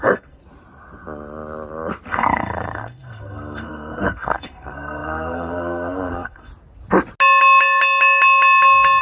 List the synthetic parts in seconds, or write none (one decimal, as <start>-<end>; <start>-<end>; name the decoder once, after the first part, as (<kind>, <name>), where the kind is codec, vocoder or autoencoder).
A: 0.0-0.4 (codec, SNAC); 2.1-6.5